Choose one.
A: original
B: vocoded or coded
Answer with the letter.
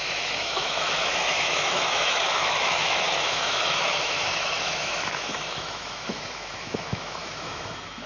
B